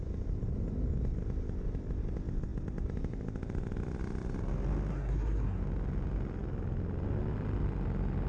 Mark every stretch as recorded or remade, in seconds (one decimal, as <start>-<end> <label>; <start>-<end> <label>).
0.0-4.9 recorded; 4.9-5.6 remade; 5.6-8.3 recorded